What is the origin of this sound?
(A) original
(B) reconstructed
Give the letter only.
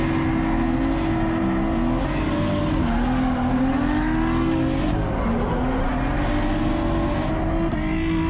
A